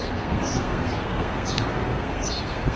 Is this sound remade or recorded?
remade